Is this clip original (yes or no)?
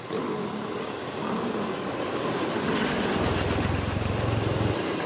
yes